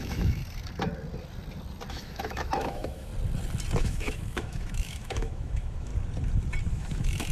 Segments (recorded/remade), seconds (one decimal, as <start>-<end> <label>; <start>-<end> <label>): 0.0-0.4 remade; 0.4-1.9 recorded; 1.9-3.1 remade; 3.1-3.8 recorded; 3.8-5.9 remade; 5.9-6.7 recorded; 6.7-7.3 remade